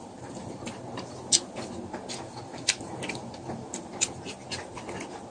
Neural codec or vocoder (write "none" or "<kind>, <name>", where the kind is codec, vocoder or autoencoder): none